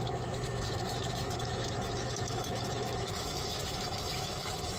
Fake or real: fake